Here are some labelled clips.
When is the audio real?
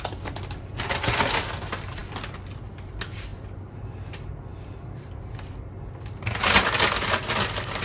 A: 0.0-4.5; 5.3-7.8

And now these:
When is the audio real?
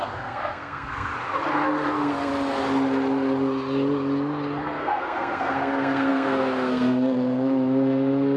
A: 1.1-1.9; 2.3-4.6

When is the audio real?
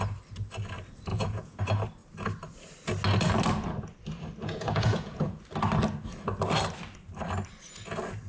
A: 0.0-1.1; 1.6-4.4; 5.4-8.3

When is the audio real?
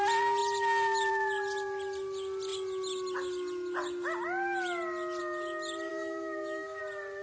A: 0.0-5.9; 6.8-7.2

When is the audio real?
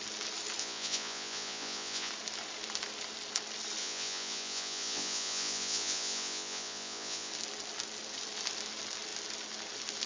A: 0.0-0.6; 2.1-3.8; 7.3-10.1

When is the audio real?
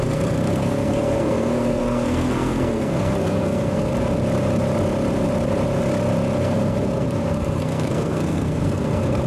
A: 3.9-6.4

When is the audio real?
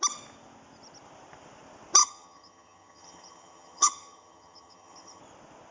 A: 0.0-2.0; 5.2-5.7